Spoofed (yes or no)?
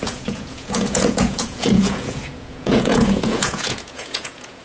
yes